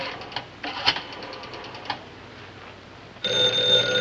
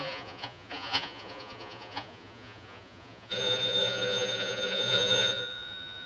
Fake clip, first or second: second